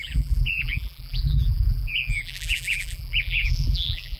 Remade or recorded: remade